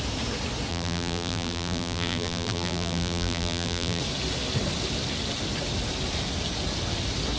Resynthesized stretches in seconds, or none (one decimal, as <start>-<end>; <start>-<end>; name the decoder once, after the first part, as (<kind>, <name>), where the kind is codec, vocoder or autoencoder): 0.7-4.0 (vocoder, BigVGAN v2)